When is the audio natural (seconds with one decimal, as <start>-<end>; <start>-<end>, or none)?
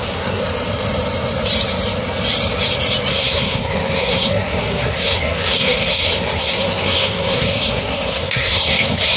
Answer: 0.4-3.1